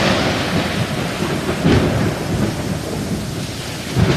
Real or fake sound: real